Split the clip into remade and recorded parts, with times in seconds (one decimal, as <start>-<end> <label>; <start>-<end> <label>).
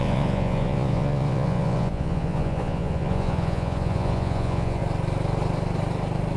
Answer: 0.0-4.8 remade; 4.8-6.4 recorded